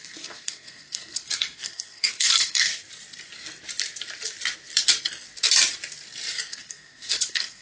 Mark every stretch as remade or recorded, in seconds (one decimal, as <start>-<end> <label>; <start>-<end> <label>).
0.0-2.7 remade; 2.7-6.5 recorded; 6.5-7.6 remade

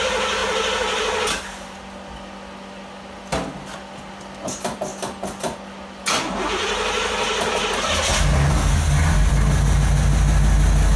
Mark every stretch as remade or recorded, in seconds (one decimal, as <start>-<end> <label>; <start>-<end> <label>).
0.0-11.0 recorded

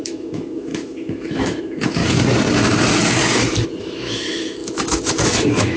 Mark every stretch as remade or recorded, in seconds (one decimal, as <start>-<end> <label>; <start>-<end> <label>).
0.0-2.0 remade; 2.0-3.8 recorded; 3.8-5.8 remade

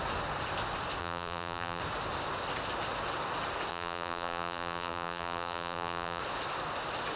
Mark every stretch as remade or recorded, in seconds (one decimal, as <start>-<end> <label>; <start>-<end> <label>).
0.0-1.0 recorded; 1.0-1.8 remade; 1.8-3.7 recorded; 3.7-6.2 remade; 6.2-7.2 recorded

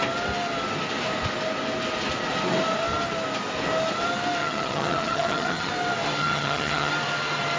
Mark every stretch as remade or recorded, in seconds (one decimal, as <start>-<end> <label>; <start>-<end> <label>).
0.0-4.4 recorded; 4.4-5.7 remade; 5.7-6.2 recorded; 6.2-6.9 remade; 6.9-7.6 recorded

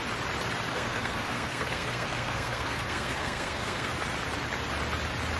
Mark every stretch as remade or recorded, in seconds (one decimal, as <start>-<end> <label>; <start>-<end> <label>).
0.0-0.7 recorded; 0.7-3.9 remade; 3.9-5.4 recorded

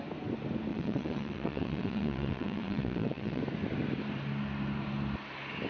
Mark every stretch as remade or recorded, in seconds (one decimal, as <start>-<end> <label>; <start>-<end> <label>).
0.0-0.7 recorded; 0.7-3.4 remade; 3.4-5.7 recorded